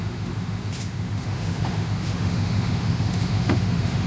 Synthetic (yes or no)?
yes